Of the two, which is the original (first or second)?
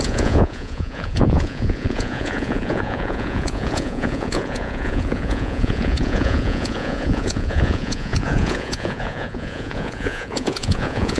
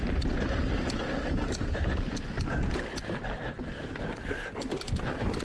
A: second